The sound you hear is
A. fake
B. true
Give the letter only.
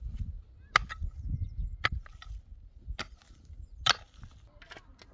B